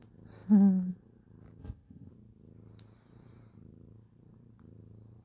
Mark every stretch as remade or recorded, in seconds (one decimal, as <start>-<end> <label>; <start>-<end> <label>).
0.0-1.6 recorded; 1.6-2.1 remade; 2.1-5.2 recorded